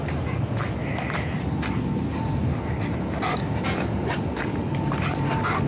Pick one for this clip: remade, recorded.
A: recorded